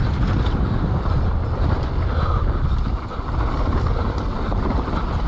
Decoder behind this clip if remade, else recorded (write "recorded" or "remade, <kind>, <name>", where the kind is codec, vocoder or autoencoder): recorded